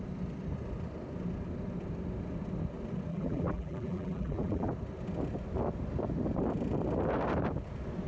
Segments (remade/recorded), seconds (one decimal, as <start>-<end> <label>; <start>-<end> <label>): 0.0-3.1 recorded; 3.1-4.7 remade; 4.7-8.1 recorded